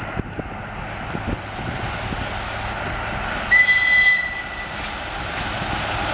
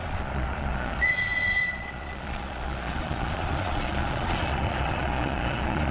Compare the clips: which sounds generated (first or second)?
second